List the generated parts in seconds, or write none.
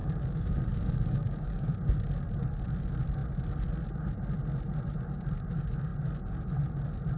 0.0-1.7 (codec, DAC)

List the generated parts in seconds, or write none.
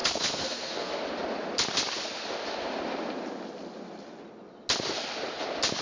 0.0-0.9 (codec, SNAC)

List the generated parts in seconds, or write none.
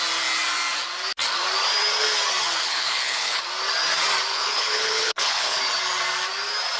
2.6-3.4 (codec, HILCodec); 4.3-5.6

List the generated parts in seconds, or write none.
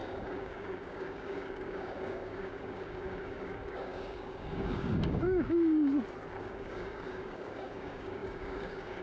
0.0-5.9 (codec, DAC); 6.4-9.0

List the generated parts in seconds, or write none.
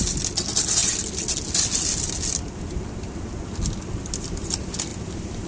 none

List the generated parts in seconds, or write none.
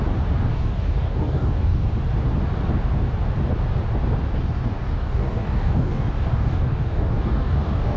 0.5-1.9 (codec, DAC); 4.3-8.0